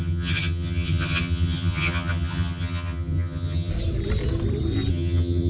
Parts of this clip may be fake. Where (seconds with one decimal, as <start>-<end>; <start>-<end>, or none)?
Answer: 0.0-3.7; 4.9-5.5